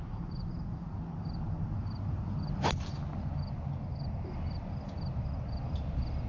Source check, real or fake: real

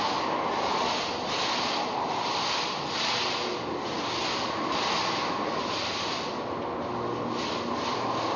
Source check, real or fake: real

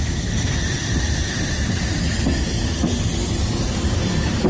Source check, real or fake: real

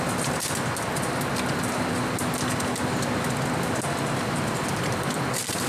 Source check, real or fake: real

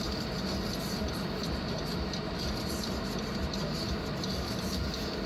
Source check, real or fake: real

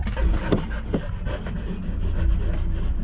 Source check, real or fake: real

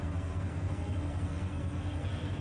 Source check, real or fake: fake